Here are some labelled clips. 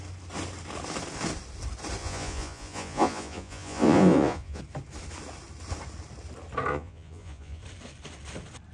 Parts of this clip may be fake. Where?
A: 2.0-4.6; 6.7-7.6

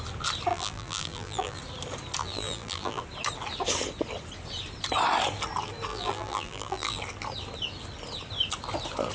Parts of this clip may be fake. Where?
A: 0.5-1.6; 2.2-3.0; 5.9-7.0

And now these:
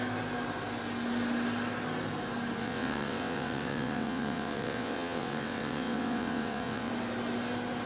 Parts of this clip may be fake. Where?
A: 2.6-6.9

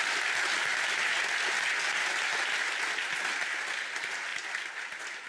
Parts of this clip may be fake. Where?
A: none

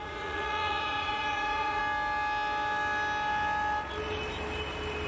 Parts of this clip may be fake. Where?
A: 0.0-1.8

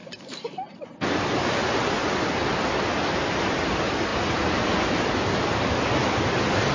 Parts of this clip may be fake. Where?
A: none

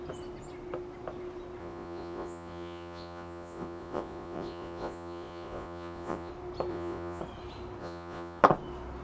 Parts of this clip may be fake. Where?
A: 1.6-6.3; 6.7-7.2; 7.8-8.4